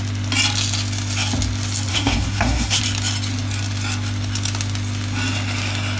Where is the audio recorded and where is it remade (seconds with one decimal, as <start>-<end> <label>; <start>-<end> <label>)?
0.0-1.9 recorded; 1.9-2.8 remade; 2.8-6.0 recorded